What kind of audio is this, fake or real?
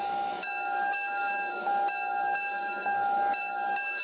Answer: fake